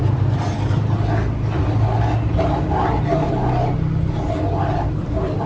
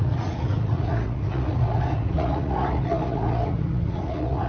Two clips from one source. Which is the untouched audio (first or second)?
first